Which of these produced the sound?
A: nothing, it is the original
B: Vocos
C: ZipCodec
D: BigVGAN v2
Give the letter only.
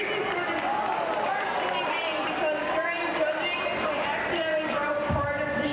A